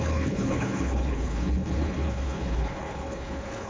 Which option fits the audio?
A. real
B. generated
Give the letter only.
B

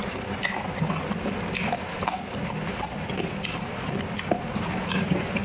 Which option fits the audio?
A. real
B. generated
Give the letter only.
A